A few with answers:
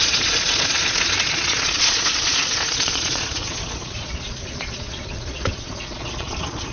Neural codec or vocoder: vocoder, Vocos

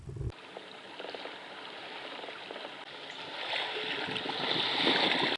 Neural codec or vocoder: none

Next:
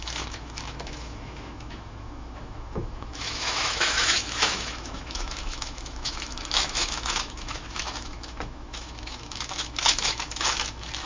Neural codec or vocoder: autoencoder, DAC-VAE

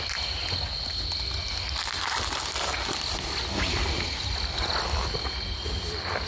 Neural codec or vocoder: none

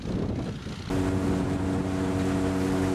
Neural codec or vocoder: none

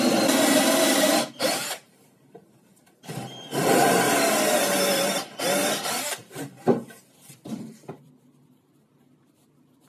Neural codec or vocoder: vocoder, BigVGAN v2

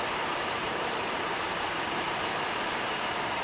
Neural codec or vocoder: vocoder, BigVGAN v2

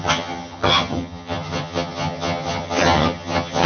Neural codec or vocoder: vocoder, HiFi-GAN